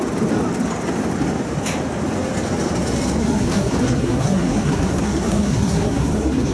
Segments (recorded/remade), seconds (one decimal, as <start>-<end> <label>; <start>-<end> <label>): 0.0-3.2 recorded; 3.2-6.5 remade